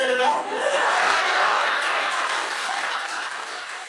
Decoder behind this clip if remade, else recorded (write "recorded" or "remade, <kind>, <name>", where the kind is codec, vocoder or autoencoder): remade, codec, DAC